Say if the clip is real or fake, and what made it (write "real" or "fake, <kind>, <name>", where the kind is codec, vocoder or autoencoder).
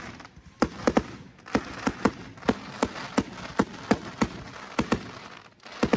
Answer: real